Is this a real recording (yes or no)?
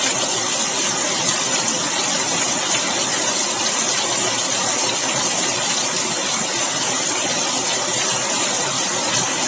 yes